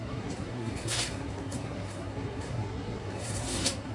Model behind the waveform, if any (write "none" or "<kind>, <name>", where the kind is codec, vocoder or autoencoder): codec, SNAC